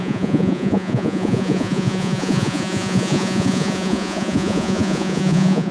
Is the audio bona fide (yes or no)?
no